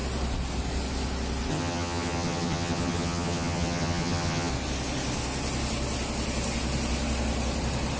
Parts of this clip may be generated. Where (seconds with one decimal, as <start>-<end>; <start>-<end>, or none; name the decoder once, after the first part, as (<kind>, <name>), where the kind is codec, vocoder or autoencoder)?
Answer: 1.5-4.5 (vocoder, HiFi-GAN)